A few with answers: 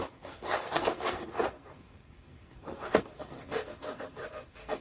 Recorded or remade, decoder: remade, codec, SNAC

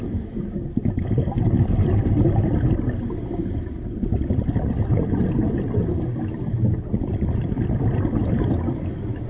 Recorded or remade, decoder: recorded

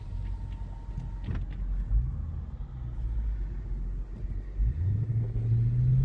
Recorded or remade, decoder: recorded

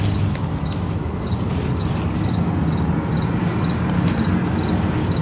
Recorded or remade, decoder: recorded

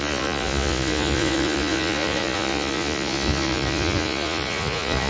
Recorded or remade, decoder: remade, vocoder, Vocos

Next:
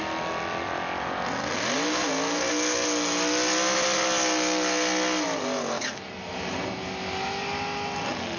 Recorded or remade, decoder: recorded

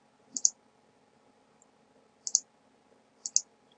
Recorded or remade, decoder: recorded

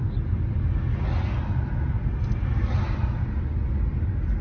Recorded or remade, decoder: recorded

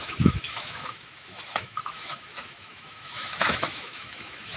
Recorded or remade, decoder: remade, autoencoder, DAC-VAE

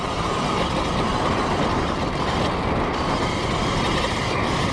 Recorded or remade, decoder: recorded